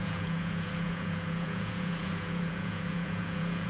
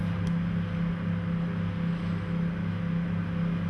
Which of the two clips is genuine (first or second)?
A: second